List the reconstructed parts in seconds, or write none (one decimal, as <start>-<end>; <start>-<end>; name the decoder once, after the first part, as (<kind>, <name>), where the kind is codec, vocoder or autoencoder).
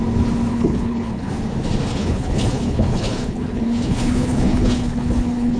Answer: 0.5-1.3 (codec, HILCodec); 1.9-5.6